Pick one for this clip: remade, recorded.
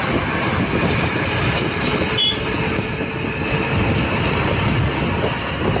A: recorded